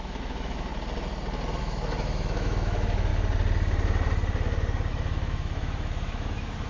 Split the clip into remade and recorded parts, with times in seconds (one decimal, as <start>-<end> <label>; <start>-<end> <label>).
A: 0.0-0.7 remade; 0.7-1.6 recorded; 1.6-3.1 remade; 3.1-4.9 recorded; 4.9-6.7 remade